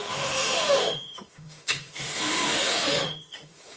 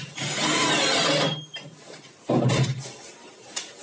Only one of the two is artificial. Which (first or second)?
first